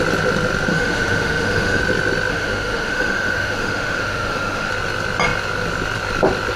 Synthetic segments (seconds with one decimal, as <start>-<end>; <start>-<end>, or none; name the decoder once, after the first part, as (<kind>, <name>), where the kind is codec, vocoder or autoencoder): 0.7-1.8 (autoencoder, DAC-VAE); 2.3-4.7